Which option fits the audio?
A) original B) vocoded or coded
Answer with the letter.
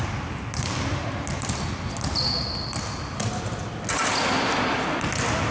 A